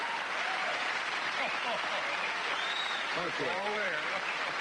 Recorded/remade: remade